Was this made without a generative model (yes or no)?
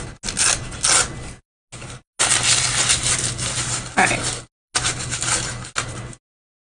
yes